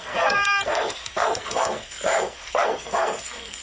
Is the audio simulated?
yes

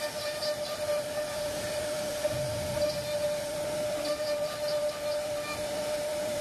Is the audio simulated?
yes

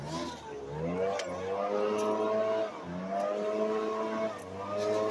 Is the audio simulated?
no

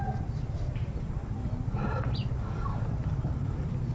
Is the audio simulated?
no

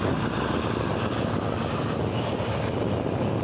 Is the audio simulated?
no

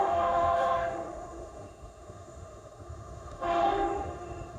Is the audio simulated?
yes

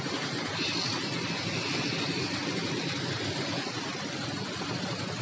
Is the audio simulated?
no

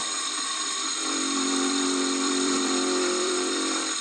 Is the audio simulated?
yes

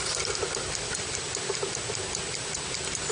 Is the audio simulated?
no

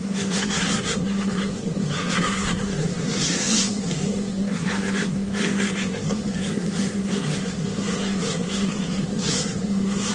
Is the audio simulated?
yes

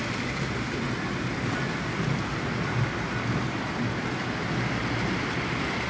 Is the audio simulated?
no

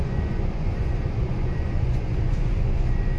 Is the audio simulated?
yes